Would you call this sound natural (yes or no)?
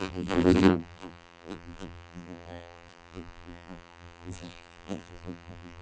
no